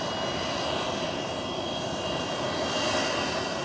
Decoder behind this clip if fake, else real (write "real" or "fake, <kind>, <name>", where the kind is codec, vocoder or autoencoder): real